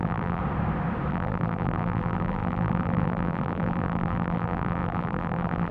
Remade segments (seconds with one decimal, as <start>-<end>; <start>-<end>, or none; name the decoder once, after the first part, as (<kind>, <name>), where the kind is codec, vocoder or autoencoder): 0.0-0.4 (vocoder, BigVGAN v2); 1.1-5.7